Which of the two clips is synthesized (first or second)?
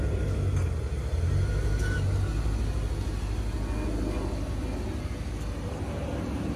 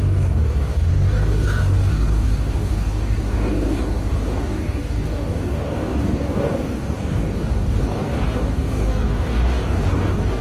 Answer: second